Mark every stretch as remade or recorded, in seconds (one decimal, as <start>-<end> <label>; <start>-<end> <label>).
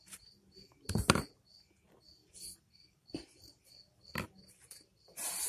0.0-5.5 recorded